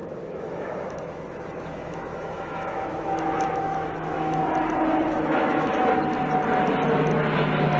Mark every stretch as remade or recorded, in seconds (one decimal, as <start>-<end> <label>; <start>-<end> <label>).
0.0-4.4 remade; 4.4-4.9 recorded; 4.9-5.9 remade; 5.9-7.8 recorded